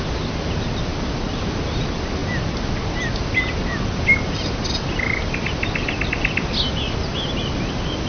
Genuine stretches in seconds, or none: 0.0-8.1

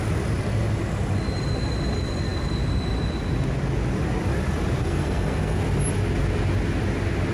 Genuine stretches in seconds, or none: 0.0-4.8; 5.6-7.3

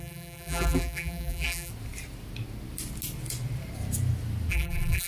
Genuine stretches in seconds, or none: 1.7-4.5

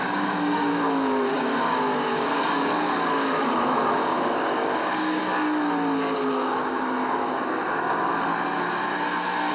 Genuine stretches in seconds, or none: 5.2-6.3; 8.3-9.5

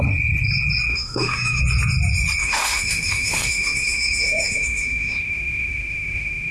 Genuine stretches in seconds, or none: 0.0-0.9; 1.6-2.4

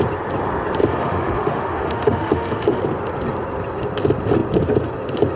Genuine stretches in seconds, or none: 0.0-0.8; 2.8-5.4

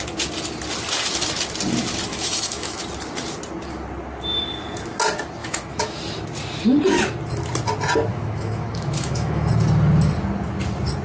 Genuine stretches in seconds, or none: 0.0-2.1; 2.8-5.4; 6.0-8.1; 9.5-11.0

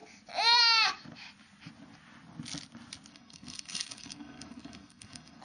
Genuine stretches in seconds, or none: 0.0-3.1